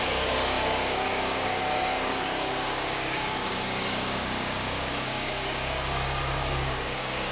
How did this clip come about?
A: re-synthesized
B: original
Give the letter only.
A